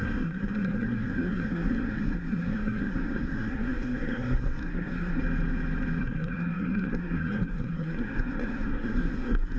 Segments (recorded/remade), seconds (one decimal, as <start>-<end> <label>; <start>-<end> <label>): 0.0-5.2 remade; 5.2-6.0 recorded; 6.0-9.6 remade